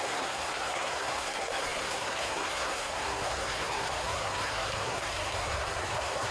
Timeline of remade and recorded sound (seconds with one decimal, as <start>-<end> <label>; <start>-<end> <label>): 0.0-6.3 remade